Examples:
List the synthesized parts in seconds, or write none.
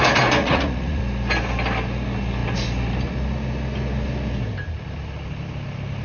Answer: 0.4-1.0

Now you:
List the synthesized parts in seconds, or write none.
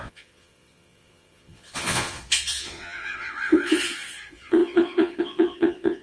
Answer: 0.0-6.0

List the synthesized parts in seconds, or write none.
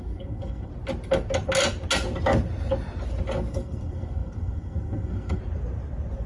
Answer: 0.0-0.7; 3.5-5.4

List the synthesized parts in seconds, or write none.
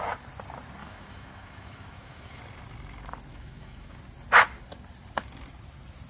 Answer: 0.8-2.4; 3.3-4.0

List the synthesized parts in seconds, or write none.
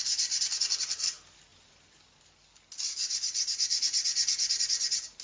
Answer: none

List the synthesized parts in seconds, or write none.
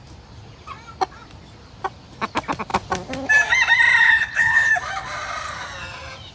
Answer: 4.0-4.7